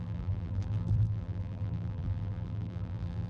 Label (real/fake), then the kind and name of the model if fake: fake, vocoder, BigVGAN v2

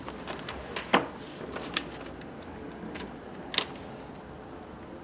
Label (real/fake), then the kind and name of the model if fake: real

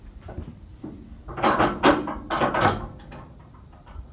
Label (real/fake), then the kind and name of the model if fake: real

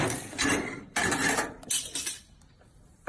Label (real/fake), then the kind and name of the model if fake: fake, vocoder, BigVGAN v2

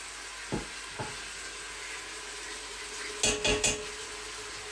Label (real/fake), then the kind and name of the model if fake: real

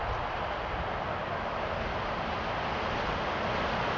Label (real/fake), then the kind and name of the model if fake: real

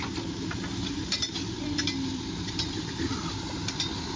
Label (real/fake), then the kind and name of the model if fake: real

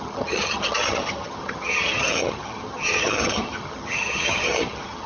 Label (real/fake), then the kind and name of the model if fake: fake, vocoder, HiFi-GAN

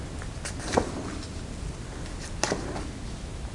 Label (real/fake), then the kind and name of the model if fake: real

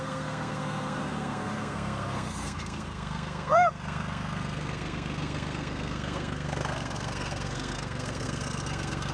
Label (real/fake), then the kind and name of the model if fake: fake, codec, SNAC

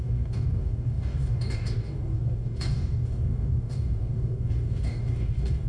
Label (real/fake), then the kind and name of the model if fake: fake, codec, DAC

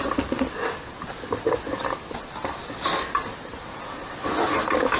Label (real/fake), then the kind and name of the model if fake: real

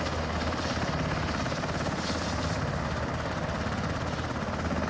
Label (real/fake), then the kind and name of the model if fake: real